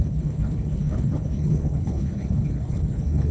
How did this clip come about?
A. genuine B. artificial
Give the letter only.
B